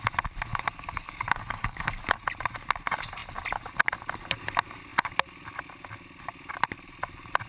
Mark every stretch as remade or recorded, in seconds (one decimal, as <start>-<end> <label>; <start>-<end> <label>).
0.0-0.5 recorded; 0.5-2.2 remade; 2.2-7.5 recorded